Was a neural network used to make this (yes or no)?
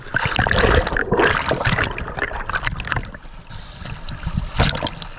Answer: no